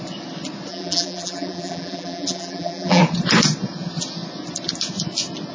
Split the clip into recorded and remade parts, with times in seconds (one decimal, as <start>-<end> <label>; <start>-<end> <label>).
0.0-0.7 recorded; 0.7-3.0 remade; 3.0-5.5 recorded